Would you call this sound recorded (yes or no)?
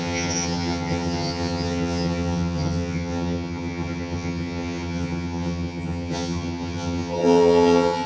no